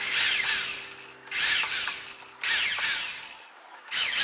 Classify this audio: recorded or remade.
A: recorded